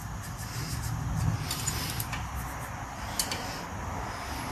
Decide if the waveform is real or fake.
real